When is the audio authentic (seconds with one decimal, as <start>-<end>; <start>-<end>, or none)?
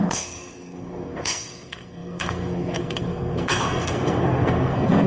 none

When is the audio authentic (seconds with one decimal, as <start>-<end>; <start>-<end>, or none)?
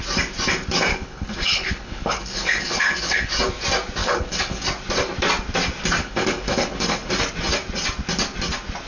0.0-0.9; 3.3-4.0; 4.6-6.0; 7.1-8.9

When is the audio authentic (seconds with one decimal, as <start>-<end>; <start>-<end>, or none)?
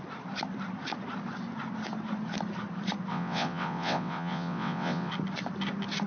0.0-3.1; 5.1-6.1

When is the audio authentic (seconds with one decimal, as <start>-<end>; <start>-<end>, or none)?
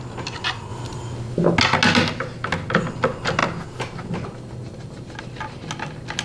0.0-6.2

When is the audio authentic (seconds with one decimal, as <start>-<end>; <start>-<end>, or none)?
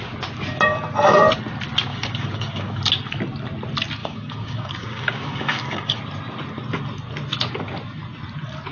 0.0-1.9; 2.8-4.0; 6.0-8.7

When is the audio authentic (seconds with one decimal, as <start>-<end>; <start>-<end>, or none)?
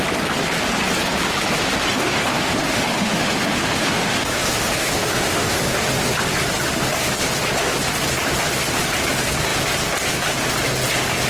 0.0-1.9; 5.6-11.3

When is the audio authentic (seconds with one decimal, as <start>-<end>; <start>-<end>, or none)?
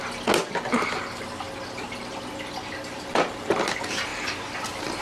0.0-2.8; 3.5-5.0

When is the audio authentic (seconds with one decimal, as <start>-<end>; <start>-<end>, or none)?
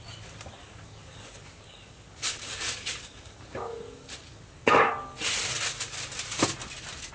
0.0-0.6; 4.9-7.1